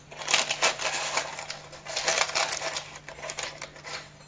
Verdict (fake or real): real